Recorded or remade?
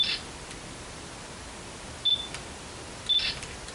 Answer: recorded